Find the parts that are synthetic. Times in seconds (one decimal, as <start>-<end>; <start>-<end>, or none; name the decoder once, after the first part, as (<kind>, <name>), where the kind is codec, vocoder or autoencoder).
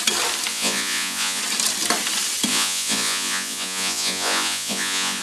0.5-1.4 (vocoder, Vocos); 2.5-5.2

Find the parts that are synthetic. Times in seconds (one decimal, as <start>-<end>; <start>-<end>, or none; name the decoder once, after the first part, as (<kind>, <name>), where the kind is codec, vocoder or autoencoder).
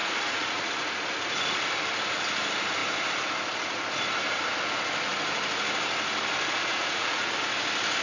0.0-0.7 (vocoder, Vocos); 6.7-7.3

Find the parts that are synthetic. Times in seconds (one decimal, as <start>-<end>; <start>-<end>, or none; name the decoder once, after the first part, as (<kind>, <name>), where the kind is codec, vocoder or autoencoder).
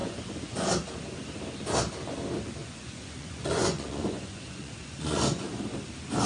0.0-0.7 (vocoder, Vocos); 2.6-5.6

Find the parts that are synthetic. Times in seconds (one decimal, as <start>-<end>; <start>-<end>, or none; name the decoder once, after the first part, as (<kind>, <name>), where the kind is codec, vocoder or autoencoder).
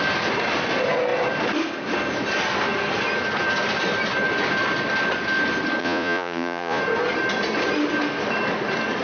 5.8-6.8 (vocoder, Vocos)